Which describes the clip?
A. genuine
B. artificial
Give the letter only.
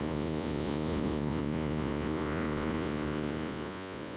B